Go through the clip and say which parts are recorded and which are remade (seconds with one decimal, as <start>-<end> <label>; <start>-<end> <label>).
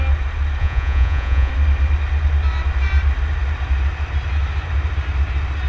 0.0-0.6 recorded; 0.6-1.5 remade; 1.5-5.7 recorded